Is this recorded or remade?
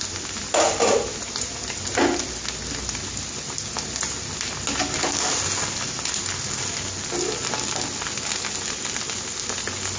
recorded